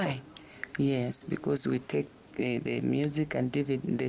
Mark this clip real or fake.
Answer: real